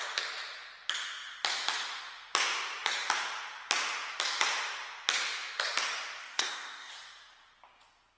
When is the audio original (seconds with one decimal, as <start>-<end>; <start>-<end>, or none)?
0.0-6.2; 6.9-8.2

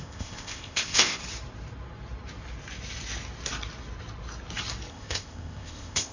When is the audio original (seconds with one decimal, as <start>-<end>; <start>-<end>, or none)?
1.2-4.9

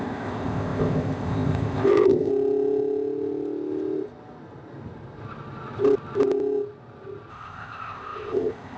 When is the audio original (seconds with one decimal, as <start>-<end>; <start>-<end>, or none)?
2.3-7.3

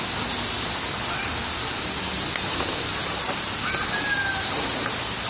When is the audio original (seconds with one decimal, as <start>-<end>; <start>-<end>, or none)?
0.0-5.3

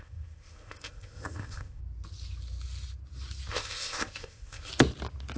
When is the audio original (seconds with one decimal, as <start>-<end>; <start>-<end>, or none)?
1.8-3.5; 4.7-5.4